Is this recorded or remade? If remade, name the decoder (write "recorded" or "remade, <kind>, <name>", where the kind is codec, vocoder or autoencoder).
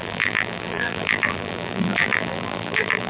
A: remade, vocoder, BigVGAN v2